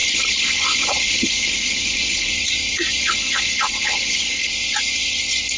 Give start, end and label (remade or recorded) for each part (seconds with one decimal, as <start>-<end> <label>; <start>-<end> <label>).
0.0-2.3 remade; 2.3-3.0 recorded; 3.0-4.5 remade; 4.5-5.6 recorded